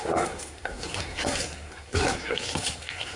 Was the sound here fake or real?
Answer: fake